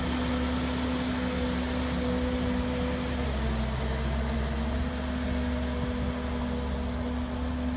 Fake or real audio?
real